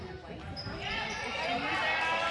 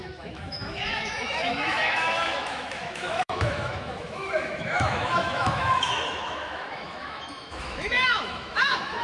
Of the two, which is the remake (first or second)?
second